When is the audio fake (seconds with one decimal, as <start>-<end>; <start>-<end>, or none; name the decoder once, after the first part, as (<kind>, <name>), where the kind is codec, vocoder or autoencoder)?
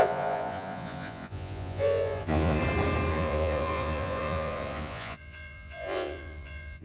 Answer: 0.0-2.6 (vocoder, Vocos); 3.1-6.8